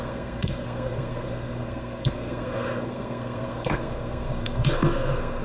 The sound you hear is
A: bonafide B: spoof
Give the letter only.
B